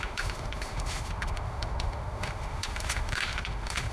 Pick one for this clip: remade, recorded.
remade